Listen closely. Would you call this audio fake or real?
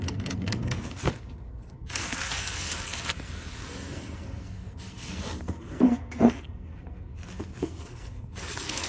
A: fake